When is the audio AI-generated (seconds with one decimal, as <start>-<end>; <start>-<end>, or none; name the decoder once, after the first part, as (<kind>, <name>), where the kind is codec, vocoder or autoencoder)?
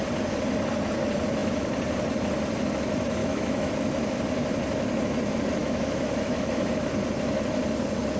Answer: 3.2-3.7 (autoencoder, DAC-VAE); 5.6-6.9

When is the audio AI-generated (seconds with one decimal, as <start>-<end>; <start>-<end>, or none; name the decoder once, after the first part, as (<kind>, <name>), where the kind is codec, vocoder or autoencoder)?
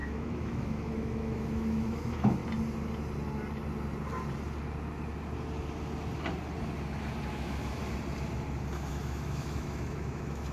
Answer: 0.0-2.4 (autoencoder, DAC-VAE); 7.3-7.8; 8.9-10.5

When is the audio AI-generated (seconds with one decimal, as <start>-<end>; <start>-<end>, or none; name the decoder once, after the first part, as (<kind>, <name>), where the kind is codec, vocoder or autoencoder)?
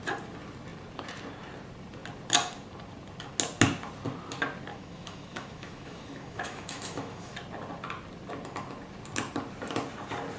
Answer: 4.7-7.3 (autoencoder, DAC-VAE)